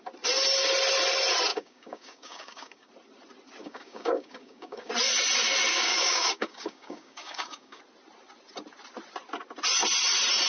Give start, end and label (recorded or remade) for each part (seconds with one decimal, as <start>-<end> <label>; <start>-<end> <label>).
0.0-1.5 recorded; 1.5-2.9 remade; 2.9-3.6 recorded; 3.6-4.9 remade; 4.9-5.7 recorded; 5.7-7.8 remade; 7.8-10.5 recorded